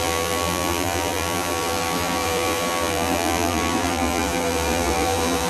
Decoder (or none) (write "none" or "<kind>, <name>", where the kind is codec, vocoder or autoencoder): vocoder, BigVGAN v2